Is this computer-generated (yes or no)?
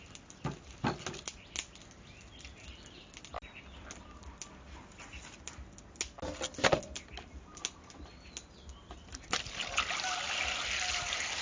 no